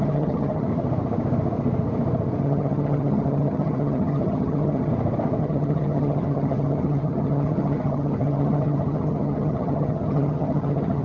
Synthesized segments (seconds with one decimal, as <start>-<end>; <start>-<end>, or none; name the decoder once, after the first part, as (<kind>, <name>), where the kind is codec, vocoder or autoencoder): 0.0-0.7 (vocoder, HiFi-GAN); 2.4-4.9; 5.4-11.0